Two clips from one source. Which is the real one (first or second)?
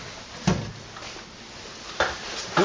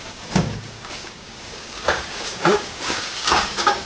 first